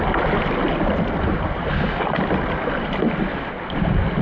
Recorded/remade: recorded